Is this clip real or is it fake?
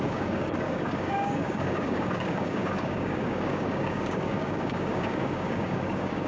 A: fake